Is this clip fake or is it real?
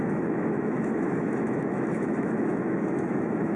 fake